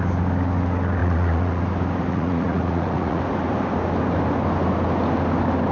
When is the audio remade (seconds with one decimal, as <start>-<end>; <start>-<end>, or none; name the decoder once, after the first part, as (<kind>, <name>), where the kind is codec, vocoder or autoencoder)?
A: 1.0-1.6 (vocoder, Vocos); 2.1-3.2